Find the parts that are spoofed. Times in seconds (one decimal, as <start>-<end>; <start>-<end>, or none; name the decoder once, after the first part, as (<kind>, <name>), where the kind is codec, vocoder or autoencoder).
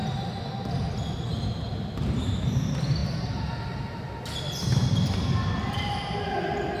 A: none